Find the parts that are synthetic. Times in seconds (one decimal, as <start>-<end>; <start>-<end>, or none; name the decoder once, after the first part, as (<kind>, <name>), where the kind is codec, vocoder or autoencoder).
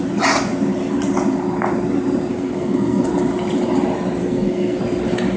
2.3-3.1 (codec, SNAC); 4.2-4.8